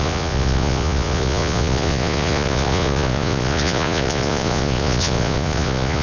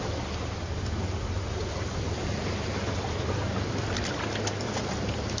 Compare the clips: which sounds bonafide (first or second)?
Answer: second